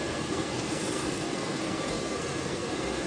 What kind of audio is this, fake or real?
fake